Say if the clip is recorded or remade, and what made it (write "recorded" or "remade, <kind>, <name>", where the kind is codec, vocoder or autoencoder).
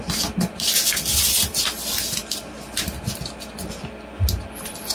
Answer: recorded